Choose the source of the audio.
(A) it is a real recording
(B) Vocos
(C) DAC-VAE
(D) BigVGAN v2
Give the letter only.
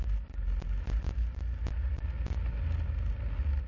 A